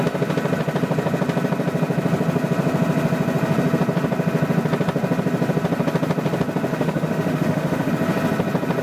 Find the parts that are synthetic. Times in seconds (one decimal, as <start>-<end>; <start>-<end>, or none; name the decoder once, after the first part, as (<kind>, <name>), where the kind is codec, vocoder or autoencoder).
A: 6.7-7.9 (autoencoder, DAC-VAE)